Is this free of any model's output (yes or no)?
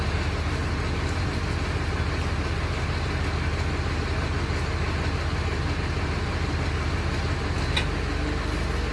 yes